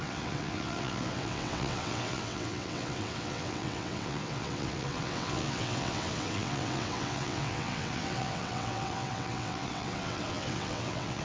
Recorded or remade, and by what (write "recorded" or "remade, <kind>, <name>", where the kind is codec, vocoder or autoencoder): remade, vocoder, WaveNeXt